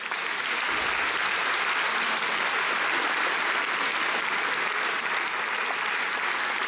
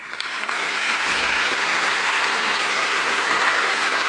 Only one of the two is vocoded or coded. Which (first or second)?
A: second